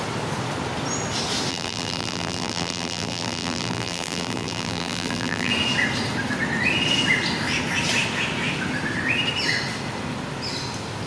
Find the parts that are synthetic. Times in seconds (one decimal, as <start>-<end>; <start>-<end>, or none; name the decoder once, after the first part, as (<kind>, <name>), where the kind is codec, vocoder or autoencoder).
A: 1.5-5.5 (vocoder, BigVGAN v2)